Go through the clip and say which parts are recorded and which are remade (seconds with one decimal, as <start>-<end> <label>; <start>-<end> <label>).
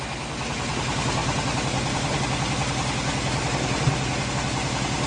0.0-5.1 recorded